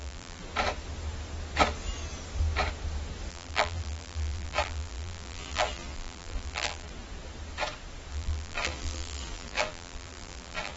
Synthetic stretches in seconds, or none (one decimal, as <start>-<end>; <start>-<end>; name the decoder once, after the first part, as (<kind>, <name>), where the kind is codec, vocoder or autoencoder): 0.0-0.4 (vocoder, BigVGAN v2); 3.3-6.9; 8.1-10.8